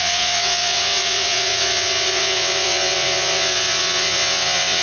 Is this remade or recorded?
remade